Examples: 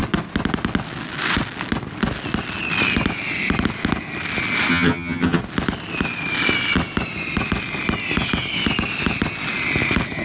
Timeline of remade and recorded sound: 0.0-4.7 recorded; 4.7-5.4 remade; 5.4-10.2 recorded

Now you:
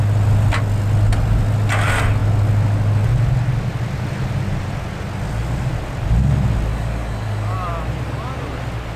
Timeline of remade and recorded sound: 0.0-6.7 recorded; 6.7-7.7 remade; 7.7-9.0 recorded

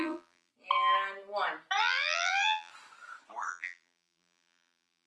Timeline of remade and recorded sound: 0.0-0.5 remade; 0.5-1.8 recorded; 1.8-2.7 remade; 2.7-3.5 recorded; 3.5-5.1 remade

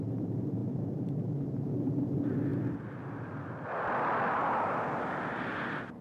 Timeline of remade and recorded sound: 0.0-2.5 remade; 2.5-4.3 recorded; 4.3-6.0 remade

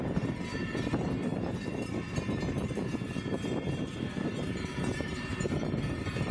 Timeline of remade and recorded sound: 0.0-6.3 remade

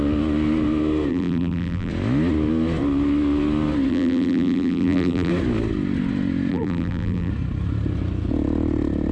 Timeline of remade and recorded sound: 0.0-1.1 recorded; 1.1-1.9 remade; 1.9-3.9 recorded; 3.9-5.3 remade; 5.3-6.5 recorded; 6.5-7.3 remade; 7.3-9.1 recorded

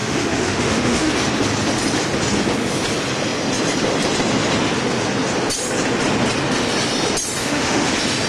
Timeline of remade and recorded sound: 0.0-1.1 remade; 1.1-7.4 recorded; 7.4-7.9 remade; 7.9-8.3 recorded